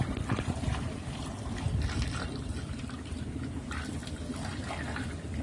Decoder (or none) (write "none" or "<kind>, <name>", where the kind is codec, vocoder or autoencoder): none